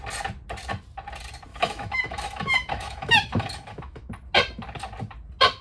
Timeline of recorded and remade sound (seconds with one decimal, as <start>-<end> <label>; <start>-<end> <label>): 0.0-1.5 recorded; 1.5-4.1 remade; 4.1-5.6 recorded

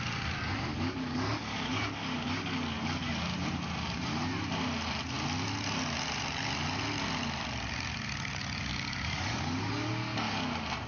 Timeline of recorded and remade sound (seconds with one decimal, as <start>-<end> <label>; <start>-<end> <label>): 0.0-0.7 recorded; 0.7-3.1 remade; 3.1-8.7 recorded; 8.7-9.9 remade; 9.9-10.9 recorded

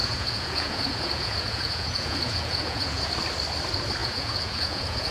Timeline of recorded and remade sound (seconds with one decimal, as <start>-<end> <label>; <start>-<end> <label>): 0.0-3.1 remade; 3.1-4.0 recorded; 4.0-5.1 remade

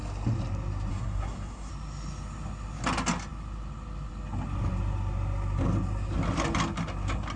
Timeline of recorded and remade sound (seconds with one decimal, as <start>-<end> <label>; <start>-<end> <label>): 0.0-0.9 recorded; 0.9-1.7 remade; 1.7-7.4 recorded

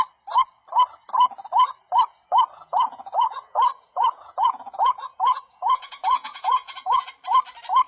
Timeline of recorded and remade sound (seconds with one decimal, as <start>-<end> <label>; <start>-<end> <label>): 0.0-2.6 recorded; 2.6-7.1 remade; 7.1-7.9 recorded

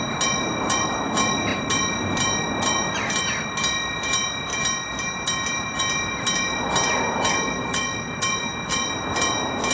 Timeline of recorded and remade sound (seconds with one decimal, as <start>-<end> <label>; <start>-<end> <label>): 0.0-9.7 recorded

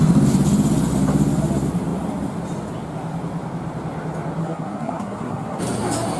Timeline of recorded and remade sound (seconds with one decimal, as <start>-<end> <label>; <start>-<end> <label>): 0.0-4.4 recorded; 4.4-5.6 remade; 5.6-6.2 recorded

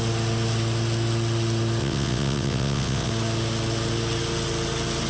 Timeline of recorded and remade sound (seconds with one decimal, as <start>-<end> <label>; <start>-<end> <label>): 0.0-1.8 recorded; 1.8-3.1 remade; 3.1-5.1 recorded